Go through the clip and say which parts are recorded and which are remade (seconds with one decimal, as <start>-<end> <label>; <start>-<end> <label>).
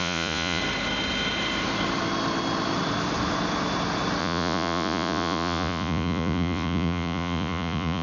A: 0.0-0.6 remade; 0.6-4.2 recorded; 4.2-8.0 remade